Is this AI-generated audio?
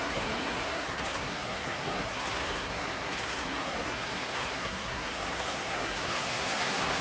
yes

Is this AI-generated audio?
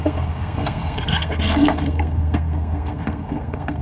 yes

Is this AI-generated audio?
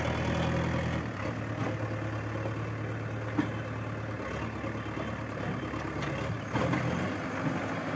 no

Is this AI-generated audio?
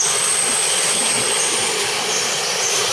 no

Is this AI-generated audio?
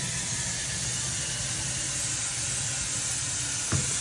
no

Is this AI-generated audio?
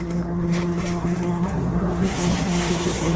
yes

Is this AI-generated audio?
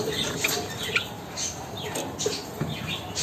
no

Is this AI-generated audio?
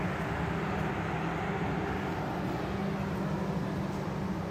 no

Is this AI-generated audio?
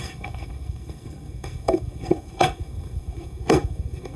yes